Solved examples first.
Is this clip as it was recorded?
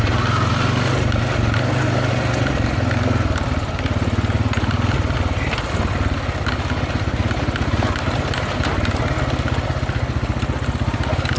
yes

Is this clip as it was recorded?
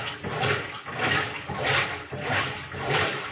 yes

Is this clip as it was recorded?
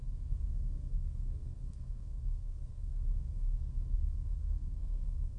no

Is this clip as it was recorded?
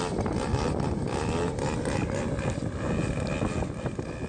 yes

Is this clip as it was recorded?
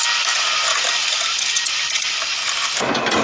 yes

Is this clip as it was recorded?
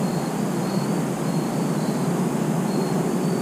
yes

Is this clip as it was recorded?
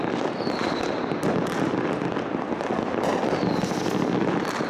yes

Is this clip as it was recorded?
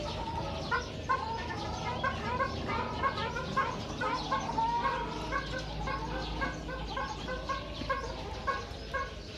yes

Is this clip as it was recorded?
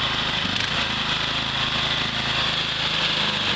yes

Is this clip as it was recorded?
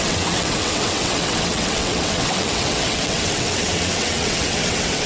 no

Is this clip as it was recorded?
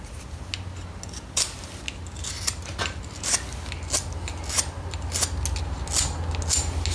yes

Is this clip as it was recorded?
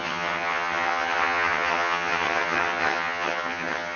no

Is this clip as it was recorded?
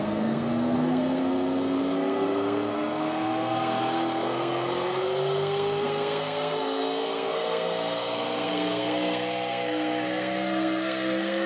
no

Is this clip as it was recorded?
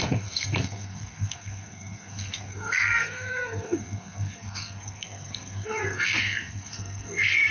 no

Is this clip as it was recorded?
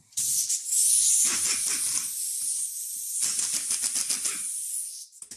yes